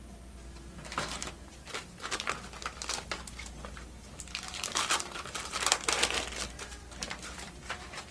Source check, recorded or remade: recorded